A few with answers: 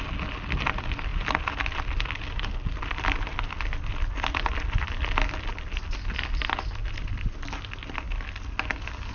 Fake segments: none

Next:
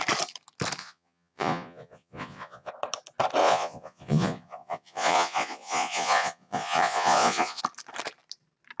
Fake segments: 0.8-2.7 (vocoder, Vocos); 3.4-7.6

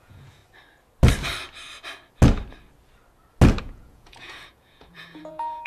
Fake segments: 0.0-0.4 (vocoder, Vocos); 3.6-5.7

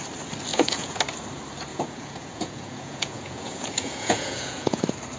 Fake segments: 0.5-1.0 (vocoder, Vocos); 1.7-4.8

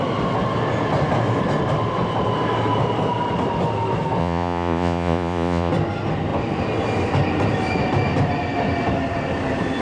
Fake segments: 4.2-5.7 (vocoder, Vocos)

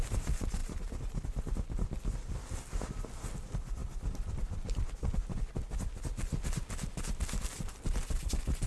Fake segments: none

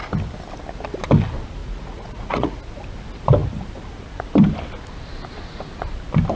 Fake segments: 1.6-2.6 (vocoder, Vocos)